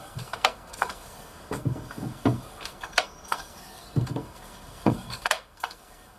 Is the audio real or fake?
fake